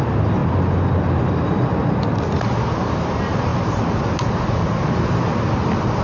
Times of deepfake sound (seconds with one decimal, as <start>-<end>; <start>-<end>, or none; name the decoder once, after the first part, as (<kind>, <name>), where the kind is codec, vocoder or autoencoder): none

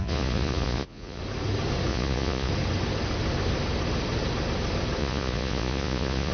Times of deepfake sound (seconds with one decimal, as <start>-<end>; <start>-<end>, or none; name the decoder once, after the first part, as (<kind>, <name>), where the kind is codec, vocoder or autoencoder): 0.0-1.2 (vocoder, Vocos); 1.9-2.5; 5.0-6.3

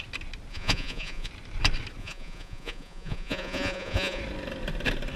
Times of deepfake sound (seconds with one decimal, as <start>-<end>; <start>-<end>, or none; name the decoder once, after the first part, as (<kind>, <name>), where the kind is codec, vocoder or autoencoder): 0.5-1.3 (vocoder, Vocos); 2.0-4.2

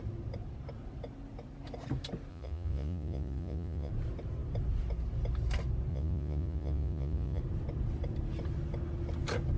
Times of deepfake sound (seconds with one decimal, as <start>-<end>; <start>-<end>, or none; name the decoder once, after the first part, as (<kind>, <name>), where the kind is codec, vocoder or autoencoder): 2.3-3.9 (vocoder, Vocos); 5.9-7.4

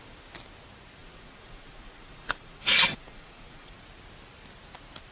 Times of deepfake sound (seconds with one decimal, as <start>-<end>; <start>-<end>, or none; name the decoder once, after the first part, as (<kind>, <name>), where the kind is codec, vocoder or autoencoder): 1.0-3.8 (vocoder, Vocos)

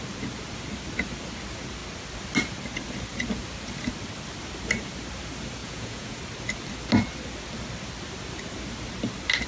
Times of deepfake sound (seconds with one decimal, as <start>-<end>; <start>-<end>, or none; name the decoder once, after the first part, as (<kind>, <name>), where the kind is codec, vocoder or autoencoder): 5.6-6.2 (vocoder, Vocos)